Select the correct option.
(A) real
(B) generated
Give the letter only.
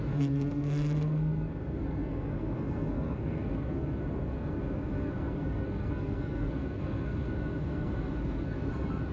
B